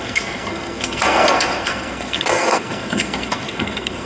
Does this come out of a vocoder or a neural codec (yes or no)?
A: yes